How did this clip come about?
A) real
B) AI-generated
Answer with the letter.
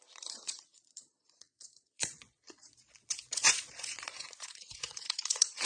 B